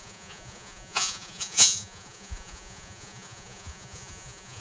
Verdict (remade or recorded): remade